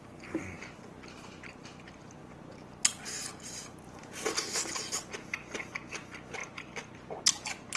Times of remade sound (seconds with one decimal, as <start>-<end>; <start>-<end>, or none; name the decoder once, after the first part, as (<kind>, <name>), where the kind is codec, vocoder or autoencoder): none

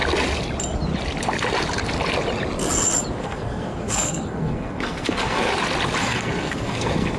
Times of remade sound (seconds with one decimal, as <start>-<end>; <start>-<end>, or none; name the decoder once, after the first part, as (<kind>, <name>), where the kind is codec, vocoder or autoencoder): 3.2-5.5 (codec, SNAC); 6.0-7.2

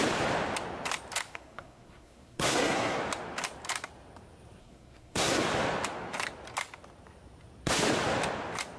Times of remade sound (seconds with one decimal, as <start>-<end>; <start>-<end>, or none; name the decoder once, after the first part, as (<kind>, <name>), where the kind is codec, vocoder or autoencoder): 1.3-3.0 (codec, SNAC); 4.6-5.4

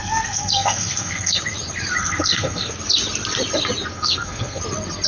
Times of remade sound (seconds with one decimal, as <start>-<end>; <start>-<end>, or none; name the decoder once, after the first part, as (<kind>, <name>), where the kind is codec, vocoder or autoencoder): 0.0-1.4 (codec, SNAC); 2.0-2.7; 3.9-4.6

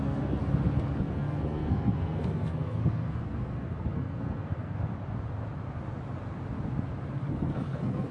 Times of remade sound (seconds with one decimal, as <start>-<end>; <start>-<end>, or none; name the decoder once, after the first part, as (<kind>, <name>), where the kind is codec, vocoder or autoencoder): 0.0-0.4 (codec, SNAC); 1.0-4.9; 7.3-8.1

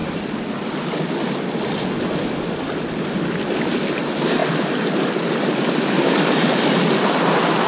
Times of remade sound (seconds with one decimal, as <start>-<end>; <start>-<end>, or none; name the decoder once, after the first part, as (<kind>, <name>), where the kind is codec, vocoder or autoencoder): none

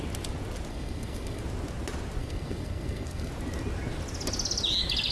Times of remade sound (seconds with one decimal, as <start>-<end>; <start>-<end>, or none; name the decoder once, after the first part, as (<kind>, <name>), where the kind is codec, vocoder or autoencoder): 0.7-1.4 (codec, SNAC); 2.2-3.3

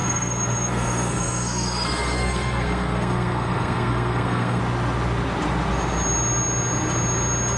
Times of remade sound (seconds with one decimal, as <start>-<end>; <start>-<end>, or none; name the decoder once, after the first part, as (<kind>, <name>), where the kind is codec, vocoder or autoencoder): 0.0-4.6 (codec, SNAC)